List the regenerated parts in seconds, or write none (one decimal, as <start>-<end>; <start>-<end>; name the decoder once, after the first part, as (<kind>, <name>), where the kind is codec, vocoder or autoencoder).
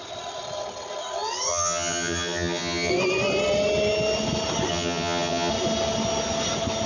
1.5-2.9 (vocoder, HiFi-GAN); 4.7-5.5